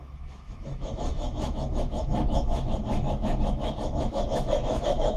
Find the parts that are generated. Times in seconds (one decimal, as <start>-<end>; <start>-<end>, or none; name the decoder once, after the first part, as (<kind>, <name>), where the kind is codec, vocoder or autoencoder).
0.0-5.2 (autoencoder, DAC-VAE)